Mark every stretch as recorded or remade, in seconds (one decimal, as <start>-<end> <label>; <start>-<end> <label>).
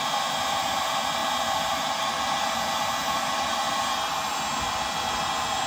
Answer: 0.0-5.7 recorded